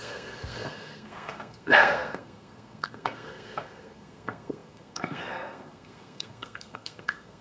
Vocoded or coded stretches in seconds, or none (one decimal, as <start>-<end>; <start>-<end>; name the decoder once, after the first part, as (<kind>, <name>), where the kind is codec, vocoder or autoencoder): 0.0-7.4 (codec, SNAC)